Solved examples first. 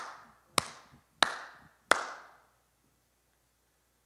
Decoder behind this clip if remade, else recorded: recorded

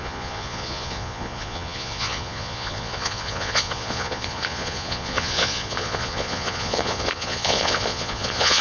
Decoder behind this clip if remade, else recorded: remade, vocoder, Vocos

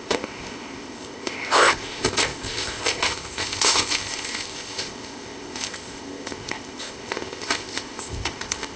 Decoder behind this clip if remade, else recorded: remade, codec, ZipCodec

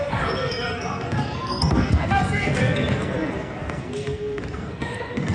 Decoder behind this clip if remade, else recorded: remade, codec, SNAC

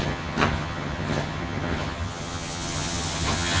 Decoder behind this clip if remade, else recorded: remade, vocoder, HiFi-GAN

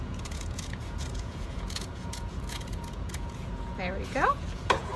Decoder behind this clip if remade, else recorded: remade, vocoder, Vocos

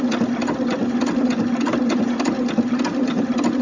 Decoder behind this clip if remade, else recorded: recorded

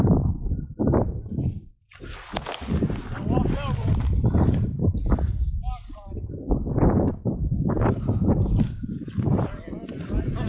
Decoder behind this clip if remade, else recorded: remade, vocoder, BigVGAN v2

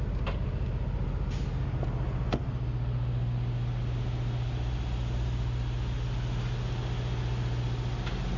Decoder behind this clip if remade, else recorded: recorded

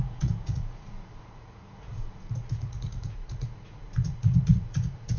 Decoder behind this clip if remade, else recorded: remade, vocoder, Vocos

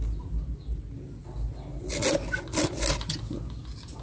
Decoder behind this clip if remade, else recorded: recorded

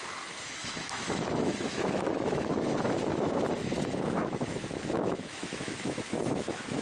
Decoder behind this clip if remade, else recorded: remade, autoencoder, DAC-VAE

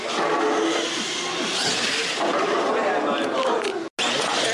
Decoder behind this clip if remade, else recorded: recorded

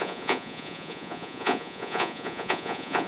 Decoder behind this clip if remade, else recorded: remade, vocoder, Vocos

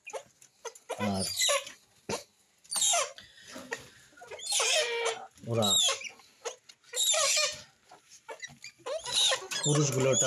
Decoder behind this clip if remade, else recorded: recorded